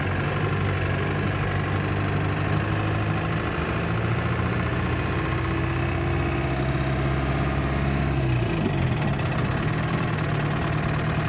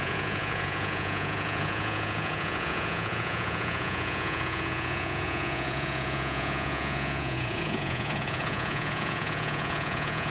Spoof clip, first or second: second